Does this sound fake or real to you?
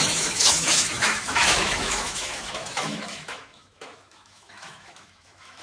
fake